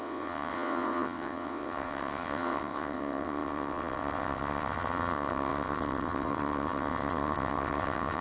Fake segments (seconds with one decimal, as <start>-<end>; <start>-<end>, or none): 0.0-8.2